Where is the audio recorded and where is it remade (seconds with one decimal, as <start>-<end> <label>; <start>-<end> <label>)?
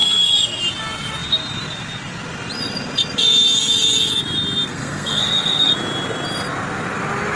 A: 0.0-0.6 remade; 0.6-4.7 recorded; 4.7-5.7 remade; 5.7-7.4 recorded